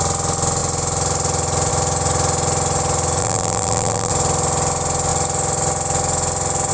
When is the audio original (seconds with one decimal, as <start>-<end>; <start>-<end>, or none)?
0.0-3.2; 4.1-6.7